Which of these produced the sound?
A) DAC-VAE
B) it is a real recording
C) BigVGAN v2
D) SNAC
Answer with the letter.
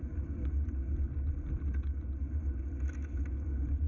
B